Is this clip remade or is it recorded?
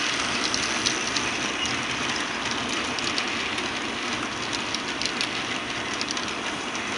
recorded